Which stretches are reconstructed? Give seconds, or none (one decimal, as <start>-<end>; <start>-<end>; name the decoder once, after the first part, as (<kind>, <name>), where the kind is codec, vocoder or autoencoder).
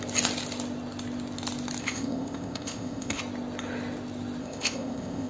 1.8-3.2 (codec, ZipCodec); 4.4-5.3